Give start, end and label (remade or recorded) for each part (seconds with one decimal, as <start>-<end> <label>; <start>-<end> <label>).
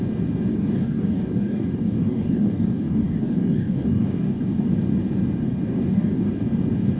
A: 0.0-0.5 recorded; 0.5-4.7 remade; 4.7-5.4 recorded; 5.4-6.4 remade; 6.4-7.0 recorded